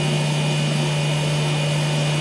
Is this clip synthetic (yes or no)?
no